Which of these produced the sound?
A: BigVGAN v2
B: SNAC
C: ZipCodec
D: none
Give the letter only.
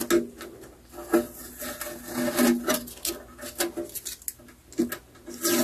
D